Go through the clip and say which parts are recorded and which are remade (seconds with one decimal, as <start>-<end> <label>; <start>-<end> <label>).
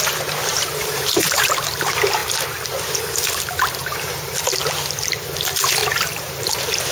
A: 0.0-0.5 recorded; 0.5-1.5 remade; 1.5-5.8 recorded; 5.8-6.9 remade